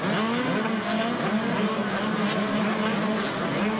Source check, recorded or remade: recorded